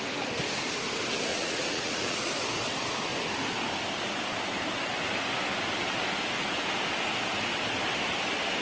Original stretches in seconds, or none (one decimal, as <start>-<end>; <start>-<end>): 0.0-1.3; 2.3-8.6